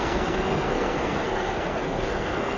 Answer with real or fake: fake